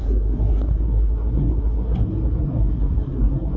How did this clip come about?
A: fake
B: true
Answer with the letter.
A